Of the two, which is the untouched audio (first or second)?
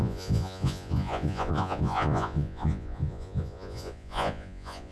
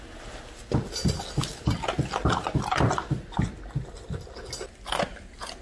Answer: second